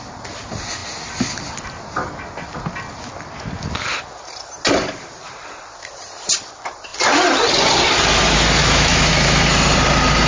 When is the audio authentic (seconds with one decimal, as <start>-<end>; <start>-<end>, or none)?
0.0-8.6; 9.1-10.3